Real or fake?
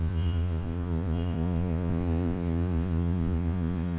fake